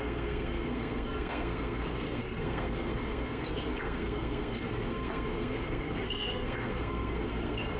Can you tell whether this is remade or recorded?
remade